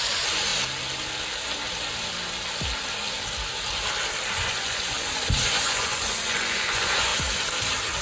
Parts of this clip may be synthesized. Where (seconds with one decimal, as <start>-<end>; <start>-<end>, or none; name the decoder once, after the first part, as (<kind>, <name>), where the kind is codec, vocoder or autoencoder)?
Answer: 0.0-0.5 (vocoder, Vocos); 4.3-7.1